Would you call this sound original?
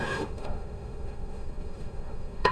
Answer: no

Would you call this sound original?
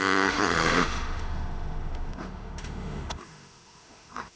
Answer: no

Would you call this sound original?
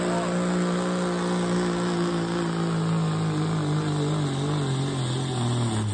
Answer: yes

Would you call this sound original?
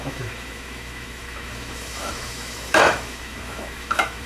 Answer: no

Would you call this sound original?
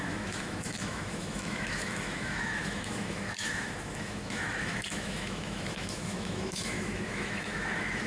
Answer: no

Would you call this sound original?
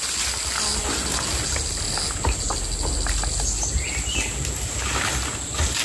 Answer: yes